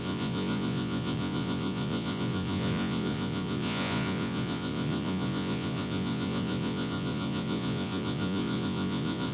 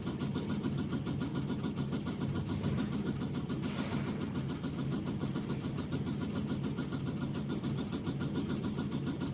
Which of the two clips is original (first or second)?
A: second